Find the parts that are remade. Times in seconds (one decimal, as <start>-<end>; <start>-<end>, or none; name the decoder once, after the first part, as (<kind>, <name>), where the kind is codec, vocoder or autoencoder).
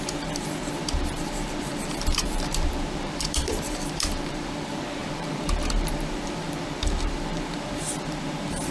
0.0-8.7 (vocoder, BigVGAN v2)